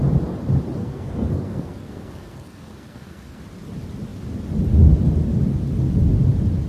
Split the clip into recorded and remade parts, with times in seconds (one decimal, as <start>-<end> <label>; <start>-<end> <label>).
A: 0.0-0.8 recorded; 0.8-3.4 remade; 3.4-6.7 recorded